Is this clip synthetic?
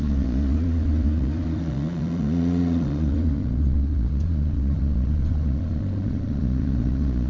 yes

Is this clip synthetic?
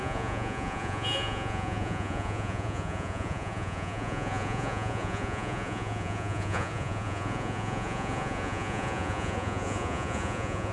yes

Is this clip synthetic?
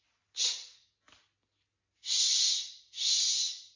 no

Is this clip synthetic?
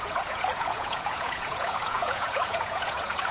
yes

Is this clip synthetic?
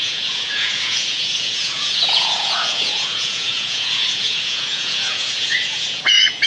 yes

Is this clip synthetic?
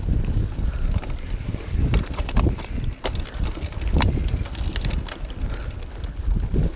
no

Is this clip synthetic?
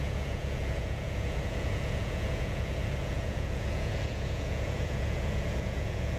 yes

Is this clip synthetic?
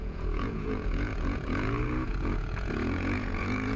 yes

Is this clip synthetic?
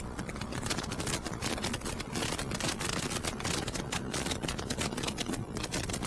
yes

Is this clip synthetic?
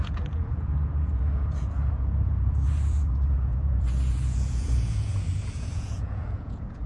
yes